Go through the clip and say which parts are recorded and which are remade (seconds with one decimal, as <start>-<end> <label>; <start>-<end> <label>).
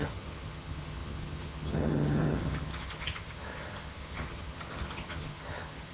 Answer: 0.0-5.9 remade